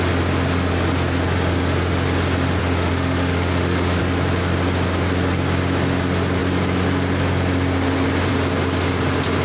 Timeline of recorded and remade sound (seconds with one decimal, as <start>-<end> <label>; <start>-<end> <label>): 0.0-2.6 recorded; 2.6-4.0 remade; 4.0-9.4 recorded